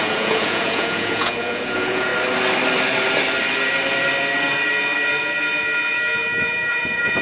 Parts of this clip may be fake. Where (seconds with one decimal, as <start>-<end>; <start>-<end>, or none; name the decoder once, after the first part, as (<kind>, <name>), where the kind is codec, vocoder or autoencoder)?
0.0-2.1 (vocoder, Vocos); 6.4-7.2